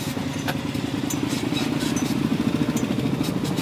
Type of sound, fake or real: real